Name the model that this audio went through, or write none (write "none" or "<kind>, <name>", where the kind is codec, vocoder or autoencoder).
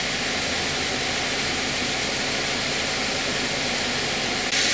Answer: none